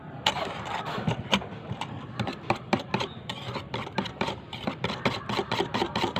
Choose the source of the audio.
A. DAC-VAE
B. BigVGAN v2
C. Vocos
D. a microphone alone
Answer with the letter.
B